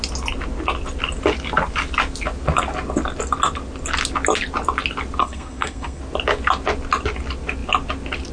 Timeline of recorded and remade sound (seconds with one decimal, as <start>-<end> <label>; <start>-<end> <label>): 0.0-5.2 recorded; 5.2-6.0 remade; 6.0-8.3 recorded